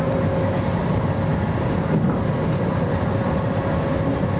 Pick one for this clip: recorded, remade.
recorded